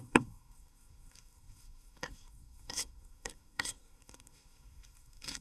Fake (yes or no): yes